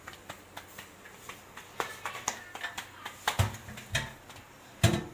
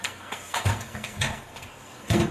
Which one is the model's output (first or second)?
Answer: second